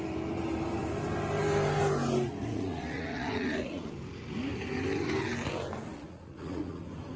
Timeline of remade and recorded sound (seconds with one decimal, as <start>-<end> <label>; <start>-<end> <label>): 0.0-2.5 recorded; 2.5-3.9 remade; 3.9-5.9 recorded; 5.9-6.8 remade; 6.8-7.2 recorded